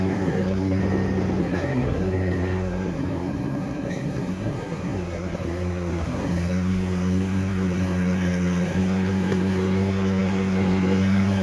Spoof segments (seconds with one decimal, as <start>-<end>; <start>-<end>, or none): 0.0-0.8; 1.4-11.4